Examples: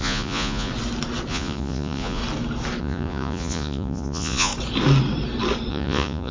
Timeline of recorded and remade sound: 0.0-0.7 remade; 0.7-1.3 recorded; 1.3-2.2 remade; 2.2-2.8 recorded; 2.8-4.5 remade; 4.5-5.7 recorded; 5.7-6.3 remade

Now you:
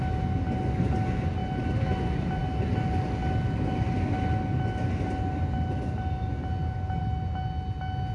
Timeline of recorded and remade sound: 0.0-8.1 recorded